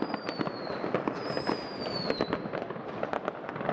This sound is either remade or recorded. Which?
recorded